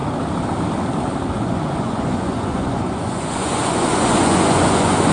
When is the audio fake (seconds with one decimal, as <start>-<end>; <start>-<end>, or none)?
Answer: 1.3-5.1